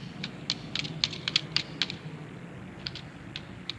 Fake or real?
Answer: real